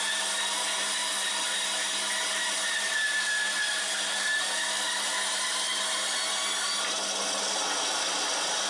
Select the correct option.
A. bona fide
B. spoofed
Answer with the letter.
A